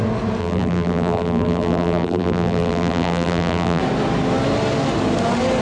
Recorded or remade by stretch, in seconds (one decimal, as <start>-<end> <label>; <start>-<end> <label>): 0.0-0.4 recorded; 0.4-3.8 remade; 3.8-5.6 recorded